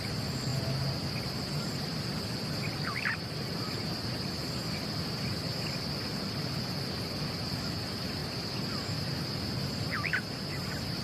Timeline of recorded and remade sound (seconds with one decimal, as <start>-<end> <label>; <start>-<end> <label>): 0.0-11.0 recorded